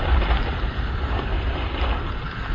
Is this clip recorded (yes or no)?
yes